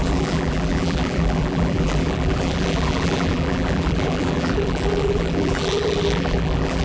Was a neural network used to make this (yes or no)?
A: yes